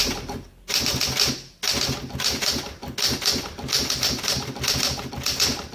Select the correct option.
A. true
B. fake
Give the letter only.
A